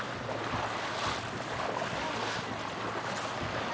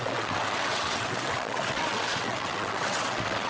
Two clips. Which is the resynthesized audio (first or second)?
second